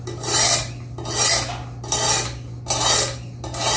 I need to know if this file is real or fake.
real